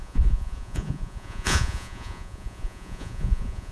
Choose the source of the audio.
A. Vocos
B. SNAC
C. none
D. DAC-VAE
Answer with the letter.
A